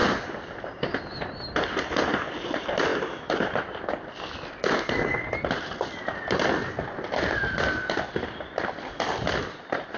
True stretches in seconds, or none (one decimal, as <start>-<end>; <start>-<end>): 0.9-10.0